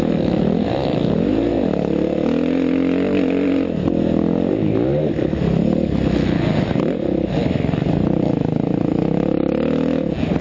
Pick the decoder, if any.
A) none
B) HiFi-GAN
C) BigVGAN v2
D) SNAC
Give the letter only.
A